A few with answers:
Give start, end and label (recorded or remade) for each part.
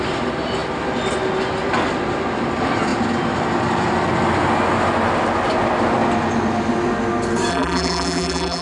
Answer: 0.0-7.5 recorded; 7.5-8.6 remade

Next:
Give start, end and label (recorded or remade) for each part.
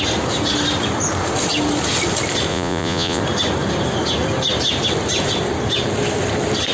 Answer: 0.0-2.5 recorded; 2.5-3.2 remade; 3.2-6.7 recorded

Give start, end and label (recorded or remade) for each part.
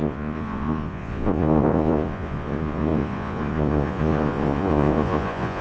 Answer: 0.0-5.6 remade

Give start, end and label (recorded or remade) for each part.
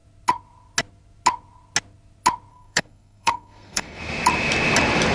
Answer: 0.0-2.5 recorded; 2.5-4.0 remade; 4.0-5.1 recorded